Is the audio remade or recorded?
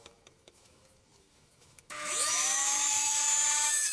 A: remade